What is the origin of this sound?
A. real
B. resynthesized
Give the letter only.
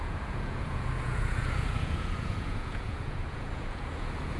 B